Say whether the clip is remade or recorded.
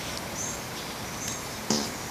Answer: recorded